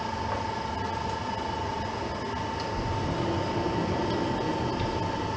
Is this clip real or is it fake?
real